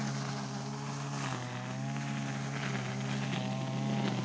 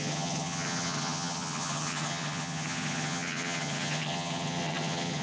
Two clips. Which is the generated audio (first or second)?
second